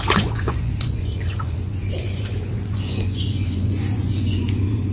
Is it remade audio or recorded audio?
remade